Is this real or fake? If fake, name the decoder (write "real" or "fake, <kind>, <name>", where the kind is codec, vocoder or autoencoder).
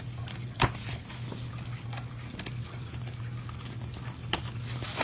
real